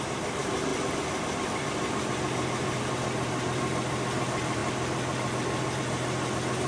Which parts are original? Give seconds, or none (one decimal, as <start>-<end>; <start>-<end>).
0.0-6.7